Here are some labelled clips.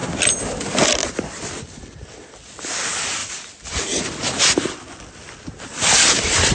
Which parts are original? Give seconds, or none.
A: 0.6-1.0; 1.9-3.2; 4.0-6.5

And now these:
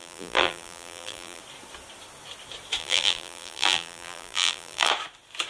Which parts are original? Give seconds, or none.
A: 1.4-2.8; 4.9-5.5